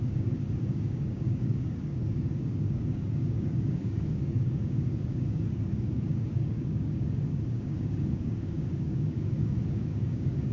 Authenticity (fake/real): fake